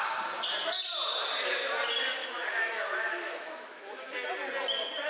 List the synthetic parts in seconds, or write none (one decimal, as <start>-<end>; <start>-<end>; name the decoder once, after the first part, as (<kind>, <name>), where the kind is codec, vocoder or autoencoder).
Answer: 2.2-4.3 (autoencoder, DAC-VAE)